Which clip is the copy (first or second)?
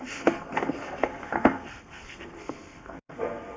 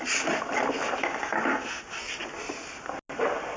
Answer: first